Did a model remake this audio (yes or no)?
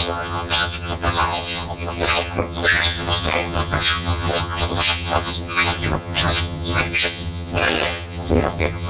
yes